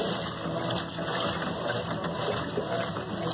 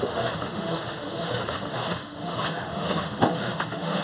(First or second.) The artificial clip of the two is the second